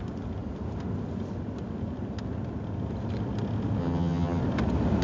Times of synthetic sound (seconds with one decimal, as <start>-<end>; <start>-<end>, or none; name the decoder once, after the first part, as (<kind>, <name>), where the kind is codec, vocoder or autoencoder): 3.8-4.4 (vocoder, HiFi-GAN)